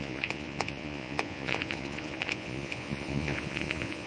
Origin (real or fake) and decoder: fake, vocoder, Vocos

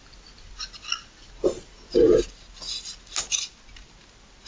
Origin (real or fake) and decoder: real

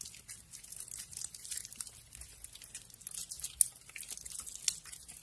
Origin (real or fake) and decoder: real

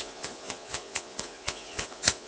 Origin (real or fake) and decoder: fake, vocoder, Vocos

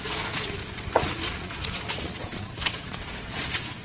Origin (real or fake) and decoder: fake, vocoder, Vocos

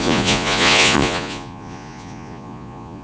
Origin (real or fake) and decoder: fake, vocoder, Vocos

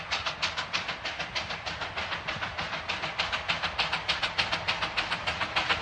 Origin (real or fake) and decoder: real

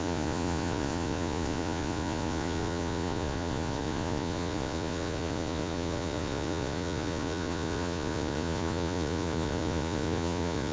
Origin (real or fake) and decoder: fake, vocoder, Vocos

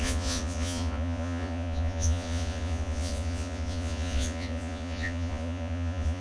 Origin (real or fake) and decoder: fake, vocoder, Vocos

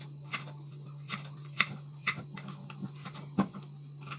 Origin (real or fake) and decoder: real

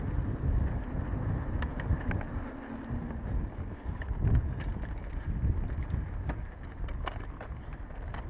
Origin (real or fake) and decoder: real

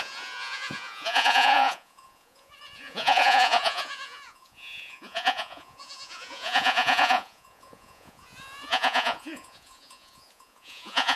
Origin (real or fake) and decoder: fake, vocoder, Vocos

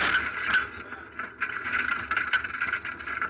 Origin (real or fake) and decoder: real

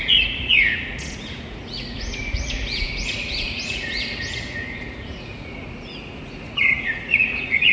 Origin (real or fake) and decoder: fake, vocoder, Vocos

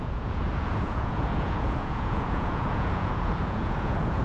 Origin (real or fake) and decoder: fake, vocoder, Vocos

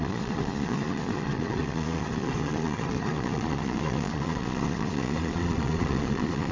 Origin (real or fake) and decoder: fake, vocoder, Vocos